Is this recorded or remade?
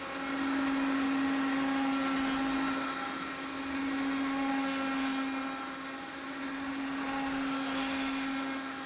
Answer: recorded